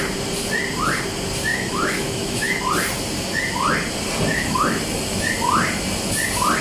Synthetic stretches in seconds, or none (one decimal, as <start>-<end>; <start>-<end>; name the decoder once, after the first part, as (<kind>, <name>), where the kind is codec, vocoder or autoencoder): 1.5-2.6 (autoencoder, DAC-VAE); 4.3-4.8

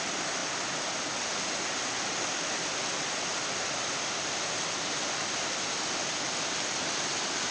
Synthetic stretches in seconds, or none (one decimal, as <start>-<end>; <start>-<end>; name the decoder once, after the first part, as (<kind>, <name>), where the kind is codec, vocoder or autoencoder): none

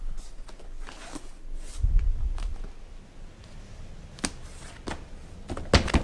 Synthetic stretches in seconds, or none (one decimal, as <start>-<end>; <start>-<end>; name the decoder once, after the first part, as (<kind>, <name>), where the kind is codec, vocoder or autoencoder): none

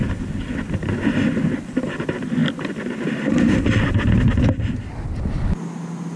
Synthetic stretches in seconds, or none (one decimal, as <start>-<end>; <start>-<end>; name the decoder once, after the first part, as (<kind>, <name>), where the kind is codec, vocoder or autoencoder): none

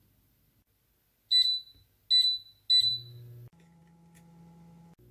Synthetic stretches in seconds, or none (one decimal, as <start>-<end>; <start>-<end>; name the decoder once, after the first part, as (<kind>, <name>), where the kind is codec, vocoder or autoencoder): none

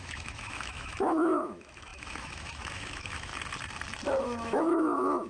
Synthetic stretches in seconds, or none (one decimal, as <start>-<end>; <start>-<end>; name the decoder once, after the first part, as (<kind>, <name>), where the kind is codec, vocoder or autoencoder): 0.0-3.3 (autoencoder, DAC-VAE); 4.2-5.3

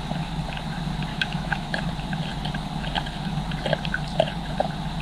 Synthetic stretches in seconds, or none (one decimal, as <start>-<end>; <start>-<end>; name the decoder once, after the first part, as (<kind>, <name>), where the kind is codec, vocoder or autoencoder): 1.1-1.8 (autoencoder, DAC-VAE)